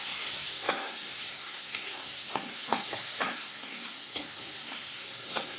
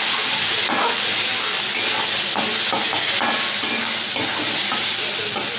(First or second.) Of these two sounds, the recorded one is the second